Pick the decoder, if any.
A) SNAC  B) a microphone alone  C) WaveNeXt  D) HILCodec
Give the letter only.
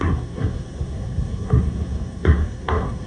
A